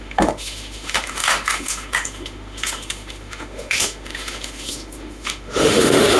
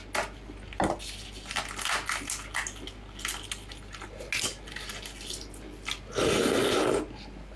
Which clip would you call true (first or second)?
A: second